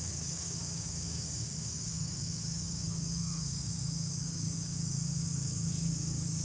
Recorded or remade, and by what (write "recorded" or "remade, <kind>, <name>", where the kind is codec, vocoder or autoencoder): remade, codec, DAC